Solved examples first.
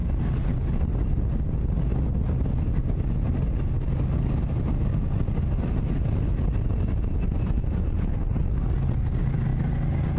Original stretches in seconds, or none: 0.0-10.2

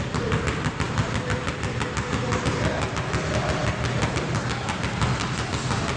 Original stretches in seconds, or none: 0.0-6.0